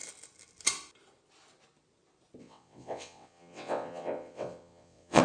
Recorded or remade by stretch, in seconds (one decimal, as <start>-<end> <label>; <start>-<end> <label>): 0.0-2.4 recorded; 2.4-5.2 remade